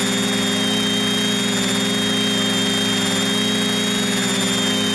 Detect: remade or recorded recorded